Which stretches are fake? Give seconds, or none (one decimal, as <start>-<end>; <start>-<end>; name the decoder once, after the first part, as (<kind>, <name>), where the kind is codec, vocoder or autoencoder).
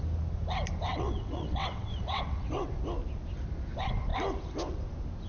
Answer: 0.9-2.7 (vocoder, WaveNeXt)